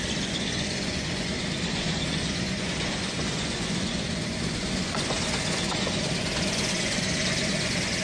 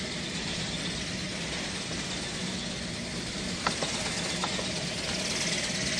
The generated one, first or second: first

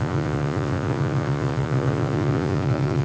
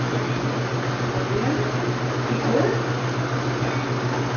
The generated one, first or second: first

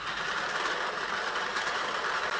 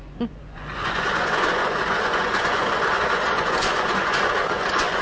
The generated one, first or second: second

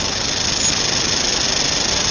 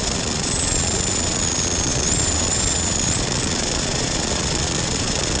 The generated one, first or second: second